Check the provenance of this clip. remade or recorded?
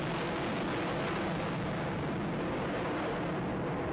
recorded